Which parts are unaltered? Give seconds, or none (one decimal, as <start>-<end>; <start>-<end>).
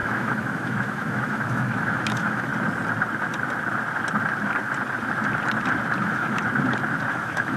2.5-6.0; 6.4-7.1